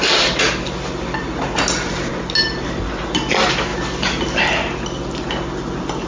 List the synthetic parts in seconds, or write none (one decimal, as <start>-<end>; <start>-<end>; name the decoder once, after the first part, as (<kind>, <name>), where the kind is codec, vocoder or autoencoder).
none

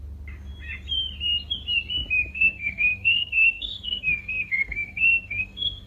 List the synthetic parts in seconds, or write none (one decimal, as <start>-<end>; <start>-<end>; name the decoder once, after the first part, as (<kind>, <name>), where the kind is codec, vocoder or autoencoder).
2.3-5.9 (codec, SNAC)

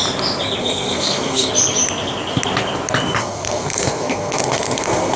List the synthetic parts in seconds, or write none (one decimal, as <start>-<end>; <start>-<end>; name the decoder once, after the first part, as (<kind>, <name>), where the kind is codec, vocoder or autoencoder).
0.6-1.5 (codec, SNAC); 3.2-5.2